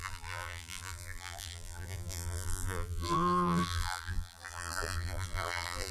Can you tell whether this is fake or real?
fake